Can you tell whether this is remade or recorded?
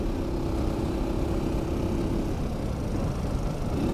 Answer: recorded